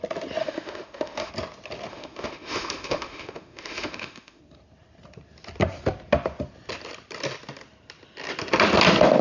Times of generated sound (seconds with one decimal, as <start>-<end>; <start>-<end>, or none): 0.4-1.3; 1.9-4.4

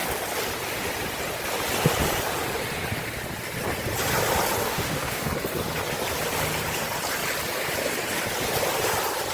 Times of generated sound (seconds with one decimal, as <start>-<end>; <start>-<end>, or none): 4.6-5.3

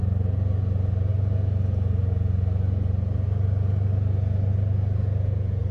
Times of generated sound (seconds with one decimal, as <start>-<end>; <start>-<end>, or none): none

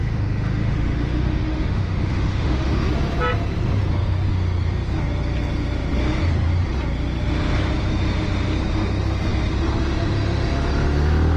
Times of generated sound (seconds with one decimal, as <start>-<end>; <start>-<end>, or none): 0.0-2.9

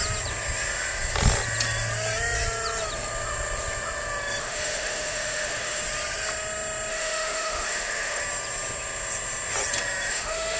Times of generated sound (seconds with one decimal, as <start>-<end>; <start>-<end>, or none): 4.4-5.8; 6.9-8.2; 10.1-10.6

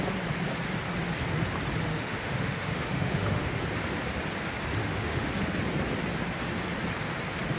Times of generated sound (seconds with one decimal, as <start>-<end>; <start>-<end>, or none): 1.9-3.6; 4.8-5.3

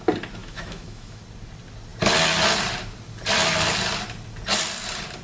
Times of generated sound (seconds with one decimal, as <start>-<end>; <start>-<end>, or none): 0.4-1.2